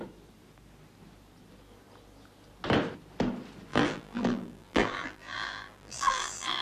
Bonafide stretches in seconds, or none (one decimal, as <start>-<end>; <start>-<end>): 0.0-3.7